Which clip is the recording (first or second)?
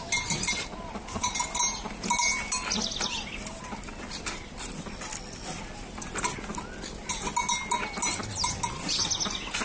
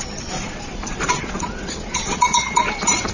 first